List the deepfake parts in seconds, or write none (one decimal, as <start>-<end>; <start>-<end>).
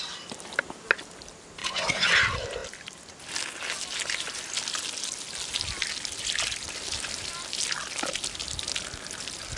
1.6-2.1